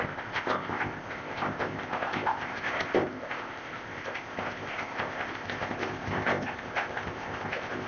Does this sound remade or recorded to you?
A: remade